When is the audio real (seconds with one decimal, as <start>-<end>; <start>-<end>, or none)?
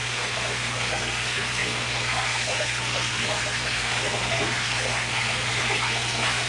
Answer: none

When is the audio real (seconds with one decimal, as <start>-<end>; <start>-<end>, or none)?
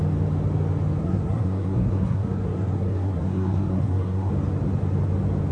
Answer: 0.0-1.0; 4.3-5.5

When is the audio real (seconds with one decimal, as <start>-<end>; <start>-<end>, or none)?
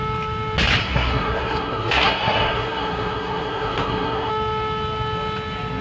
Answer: 0.0-0.8; 4.3-5.8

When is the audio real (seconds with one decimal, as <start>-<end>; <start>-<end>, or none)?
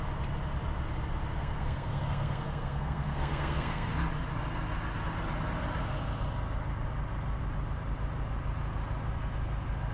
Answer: 0.0-1.4; 3.9-9.9